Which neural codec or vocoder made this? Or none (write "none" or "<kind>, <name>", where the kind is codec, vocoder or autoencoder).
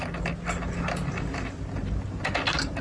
none